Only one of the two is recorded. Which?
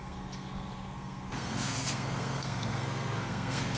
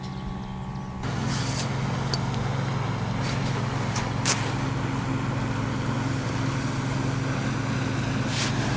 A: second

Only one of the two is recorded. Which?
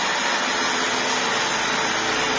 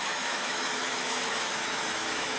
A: first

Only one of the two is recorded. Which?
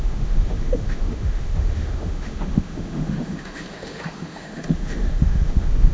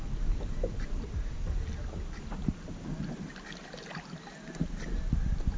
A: second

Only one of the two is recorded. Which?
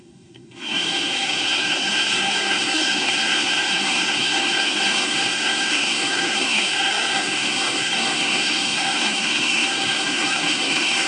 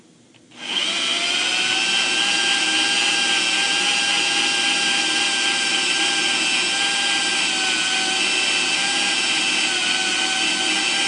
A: second